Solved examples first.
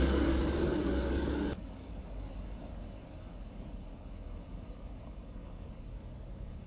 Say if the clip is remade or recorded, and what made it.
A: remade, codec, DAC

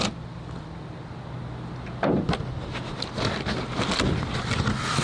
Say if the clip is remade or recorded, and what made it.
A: recorded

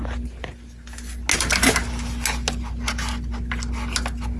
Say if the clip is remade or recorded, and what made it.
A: recorded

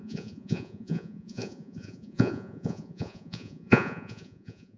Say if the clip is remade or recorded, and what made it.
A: remade, vocoder, Vocos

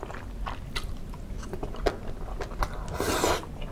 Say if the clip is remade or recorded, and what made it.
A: recorded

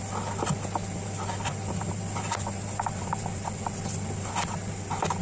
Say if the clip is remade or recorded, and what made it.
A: recorded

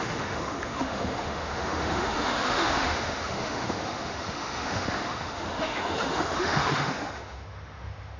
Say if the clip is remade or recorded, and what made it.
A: remade, autoencoder, DAC-VAE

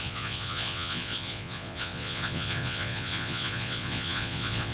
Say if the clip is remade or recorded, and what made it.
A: remade, vocoder, Vocos